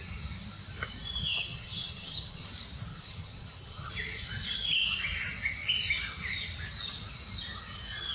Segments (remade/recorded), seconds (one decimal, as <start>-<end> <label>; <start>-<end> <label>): 0.0-1.2 recorded; 1.2-2.5 remade; 2.5-2.9 recorded; 2.9-3.9 remade; 3.9-8.1 recorded